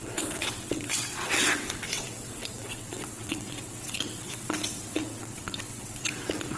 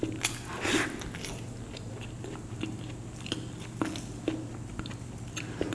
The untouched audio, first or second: second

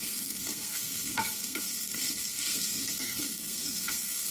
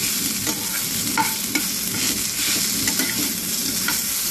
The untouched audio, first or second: second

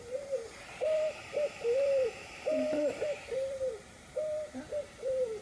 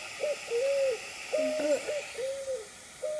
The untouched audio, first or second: second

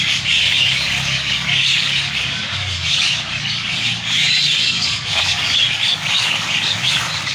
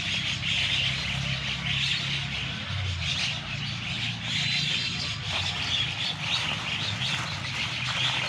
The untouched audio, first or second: second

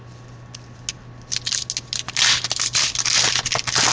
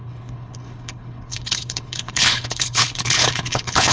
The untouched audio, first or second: first